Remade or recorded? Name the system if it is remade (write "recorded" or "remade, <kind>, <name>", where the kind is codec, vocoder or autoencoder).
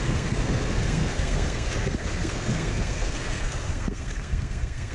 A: remade, codec, SNAC